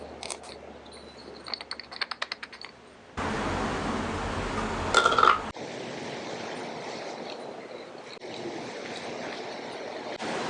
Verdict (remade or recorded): recorded